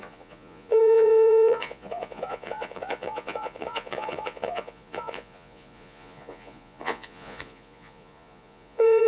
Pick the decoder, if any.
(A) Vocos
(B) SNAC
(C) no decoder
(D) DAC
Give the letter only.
A